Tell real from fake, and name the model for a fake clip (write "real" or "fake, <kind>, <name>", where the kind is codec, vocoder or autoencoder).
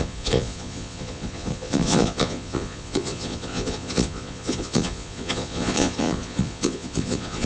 fake, vocoder, Vocos